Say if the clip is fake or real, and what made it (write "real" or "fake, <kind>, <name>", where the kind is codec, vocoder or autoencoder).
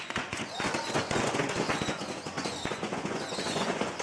fake, vocoder, Vocos